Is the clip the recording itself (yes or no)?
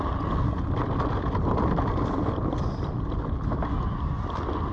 yes